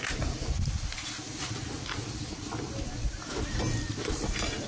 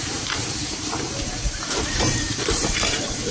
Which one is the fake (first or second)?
second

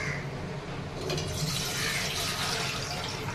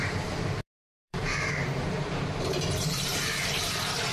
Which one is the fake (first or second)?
second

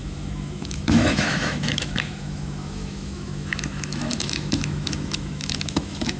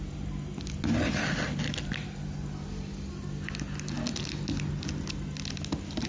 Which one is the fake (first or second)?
first